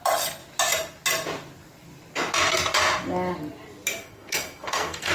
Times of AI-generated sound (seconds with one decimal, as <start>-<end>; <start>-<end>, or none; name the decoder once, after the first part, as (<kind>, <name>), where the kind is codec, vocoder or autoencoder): 4.0-5.1 (codec, SNAC)